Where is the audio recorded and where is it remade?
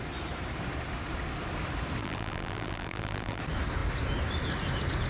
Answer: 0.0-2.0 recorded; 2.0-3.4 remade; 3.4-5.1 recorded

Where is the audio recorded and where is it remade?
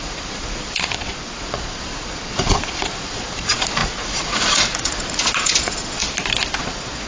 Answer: 0.0-6.0 remade; 6.0-6.6 recorded; 6.6-7.1 remade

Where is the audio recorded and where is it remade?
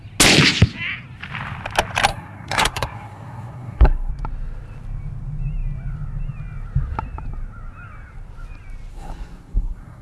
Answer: 0.0-2.1 recorded; 2.1-4.1 remade; 4.1-8.9 recorded; 8.9-10.0 remade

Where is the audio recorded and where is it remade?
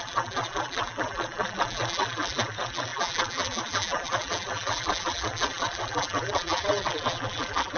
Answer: 0.0-7.8 remade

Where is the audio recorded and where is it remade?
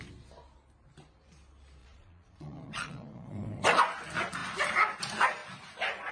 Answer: 0.0-1.8 recorded; 1.8-3.6 remade; 3.6-6.1 recorded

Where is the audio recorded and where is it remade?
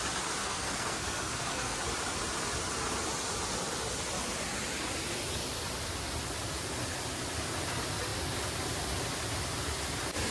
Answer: 0.0-0.4 recorded; 0.4-1.8 remade; 1.8-10.3 recorded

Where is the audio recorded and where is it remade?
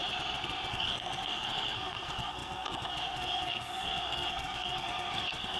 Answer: 0.0-0.7 recorded; 0.7-5.6 remade